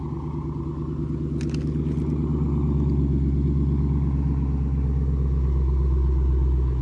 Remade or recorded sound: recorded